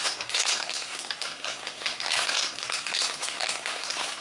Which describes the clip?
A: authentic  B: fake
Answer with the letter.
B